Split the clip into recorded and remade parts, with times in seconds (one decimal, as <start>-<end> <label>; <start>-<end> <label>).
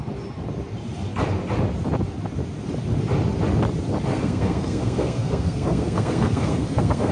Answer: 0.0-4.1 recorded; 4.1-7.1 remade